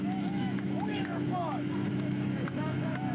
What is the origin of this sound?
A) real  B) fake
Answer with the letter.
B